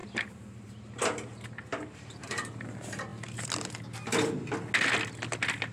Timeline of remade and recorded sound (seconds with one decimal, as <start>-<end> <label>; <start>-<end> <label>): 0.0-2.5 remade; 2.5-5.7 recorded